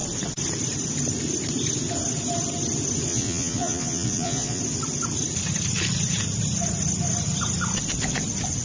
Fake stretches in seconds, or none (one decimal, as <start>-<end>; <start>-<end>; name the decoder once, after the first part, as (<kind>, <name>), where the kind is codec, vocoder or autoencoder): 3.1-4.6 (vocoder, Vocos)